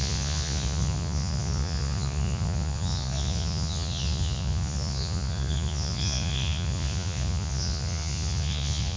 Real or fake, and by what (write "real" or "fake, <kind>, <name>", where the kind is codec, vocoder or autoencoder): fake, vocoder, Vocos